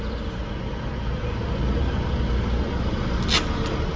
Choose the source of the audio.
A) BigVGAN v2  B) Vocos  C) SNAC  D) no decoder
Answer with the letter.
D